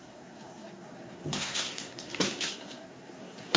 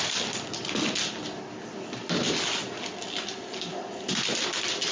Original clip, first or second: second